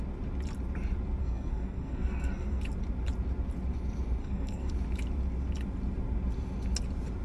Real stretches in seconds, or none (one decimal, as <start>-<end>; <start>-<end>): 0.0-1.2; 2.6-4.2; 4.7-7.2